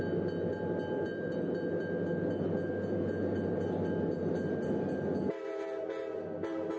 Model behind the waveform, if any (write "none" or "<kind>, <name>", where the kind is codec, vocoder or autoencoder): none